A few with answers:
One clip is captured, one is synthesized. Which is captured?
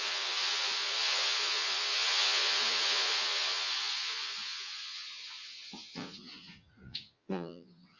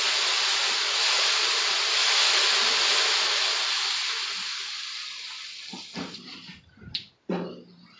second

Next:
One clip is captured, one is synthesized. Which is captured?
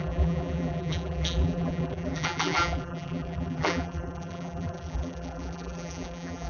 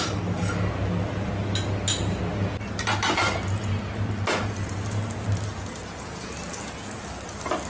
second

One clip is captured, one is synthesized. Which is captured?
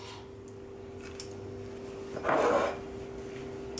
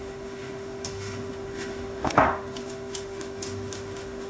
first